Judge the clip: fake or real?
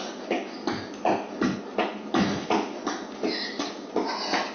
real